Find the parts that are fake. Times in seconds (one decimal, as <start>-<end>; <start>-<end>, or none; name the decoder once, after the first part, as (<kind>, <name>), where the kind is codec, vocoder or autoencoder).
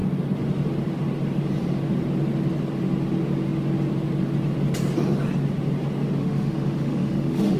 6.2-7.6 (autoencoder, DAC-VAE)